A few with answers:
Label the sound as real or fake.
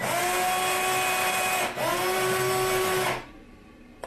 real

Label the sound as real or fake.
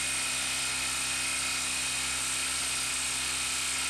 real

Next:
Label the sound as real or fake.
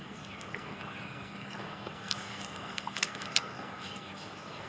fake